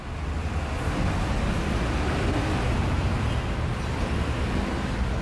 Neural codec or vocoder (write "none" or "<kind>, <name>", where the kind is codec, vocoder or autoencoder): none